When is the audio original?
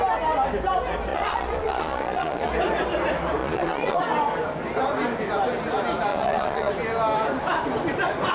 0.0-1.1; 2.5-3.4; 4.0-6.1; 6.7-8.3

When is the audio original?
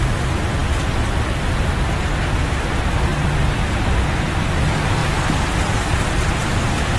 0.0-3.1; 4.6-5.0; 6.3-7.0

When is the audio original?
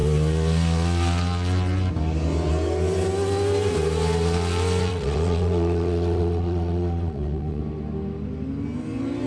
0.0-4.9; 7.6-9.3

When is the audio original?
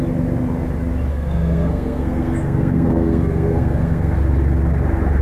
0.0-1.1; 4.2-5.2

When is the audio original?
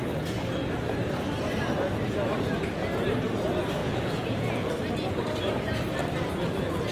0.0-3.8; 4.7-6.9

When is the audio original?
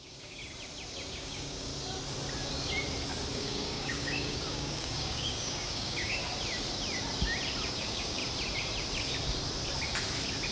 0.4-1.1; 1.7-3.3; 6.2-7.7; 8.2-10.5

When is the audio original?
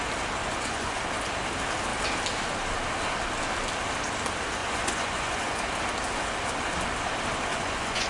0.0-0.4; 1.0-4.6; 5.6-7.5